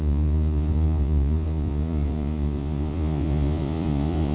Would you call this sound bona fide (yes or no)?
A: no